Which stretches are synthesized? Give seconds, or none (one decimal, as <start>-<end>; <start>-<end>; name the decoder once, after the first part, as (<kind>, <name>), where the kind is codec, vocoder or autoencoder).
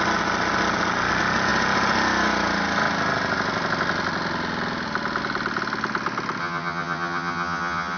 6.4-8.0 (vocoder, HiFi-GAN)